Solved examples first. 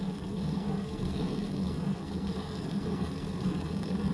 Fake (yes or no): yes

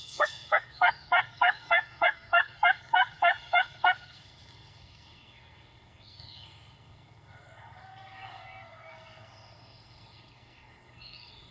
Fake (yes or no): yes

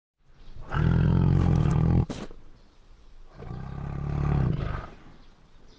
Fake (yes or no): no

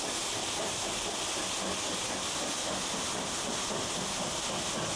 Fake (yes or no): no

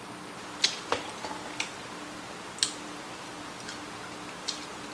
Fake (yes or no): no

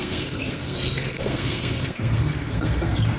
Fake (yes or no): yes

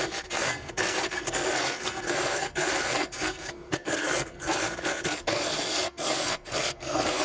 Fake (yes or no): yes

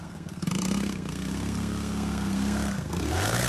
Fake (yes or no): yes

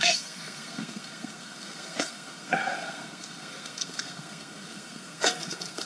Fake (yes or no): yes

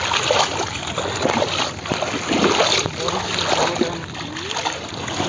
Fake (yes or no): no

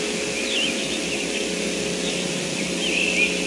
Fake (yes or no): no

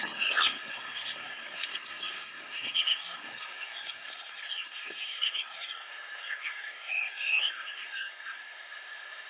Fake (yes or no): yes